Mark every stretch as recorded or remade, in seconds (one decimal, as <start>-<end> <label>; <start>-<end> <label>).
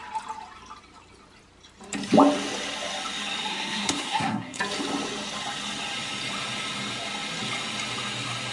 0.0-3.5 recorded; 3.5-4.6 remade; 4.6-8.5 recorded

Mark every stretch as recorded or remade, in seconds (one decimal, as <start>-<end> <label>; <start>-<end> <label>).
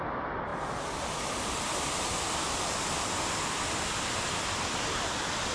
0.0-5.5 recorded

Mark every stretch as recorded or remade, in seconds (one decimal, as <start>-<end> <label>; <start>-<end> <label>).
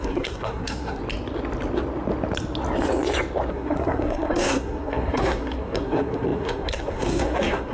0.0-1.0 remade; 1.0-3.5 recorded; 3.5-7.7 remade